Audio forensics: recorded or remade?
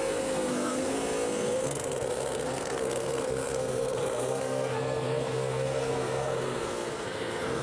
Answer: remade